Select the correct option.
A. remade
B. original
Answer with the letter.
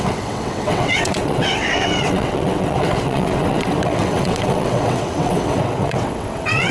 A